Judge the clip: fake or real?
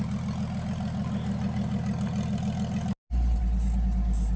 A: real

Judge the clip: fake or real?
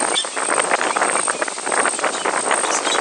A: real